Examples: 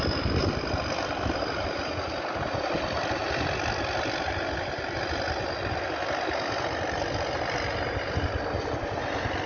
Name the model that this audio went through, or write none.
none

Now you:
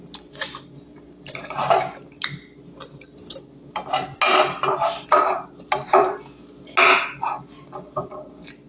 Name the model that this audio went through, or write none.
none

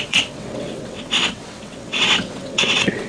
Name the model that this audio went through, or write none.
vocoder, WaveNeXt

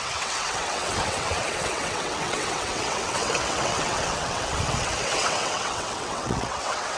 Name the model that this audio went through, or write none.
vocoder, WaveNeXt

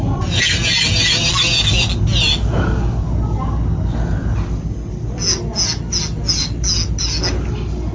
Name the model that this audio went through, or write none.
none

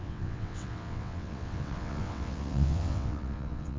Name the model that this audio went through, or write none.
vocoder, WaveNeXt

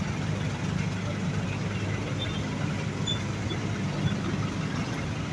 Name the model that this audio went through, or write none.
none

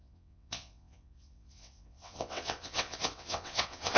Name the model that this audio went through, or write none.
vocoder, WaveNeXt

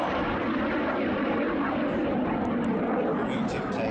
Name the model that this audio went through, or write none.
none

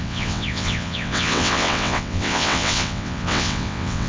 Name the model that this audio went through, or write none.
vocoder, WaveNeXt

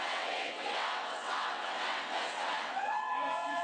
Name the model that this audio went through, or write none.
vocoder, WaveNeXt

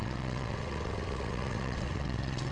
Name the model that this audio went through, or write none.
vocoder, WaveNeXt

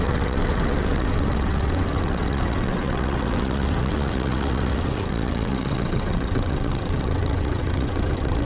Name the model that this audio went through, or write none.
vocoder, WaveNeXt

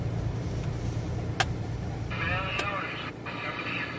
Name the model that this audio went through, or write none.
none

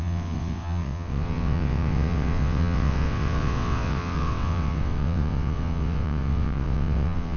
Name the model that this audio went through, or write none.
vocoder, WaveNeXt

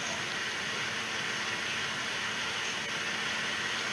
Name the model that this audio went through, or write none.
none